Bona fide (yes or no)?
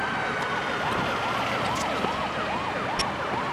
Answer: yes